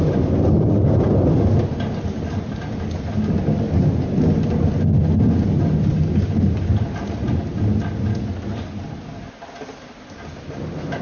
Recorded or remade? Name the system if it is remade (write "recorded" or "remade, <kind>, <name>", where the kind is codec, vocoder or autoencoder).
recorded